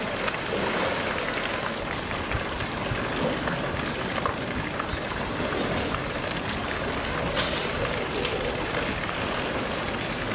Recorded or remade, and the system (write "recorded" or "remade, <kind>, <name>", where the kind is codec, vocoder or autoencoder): recorded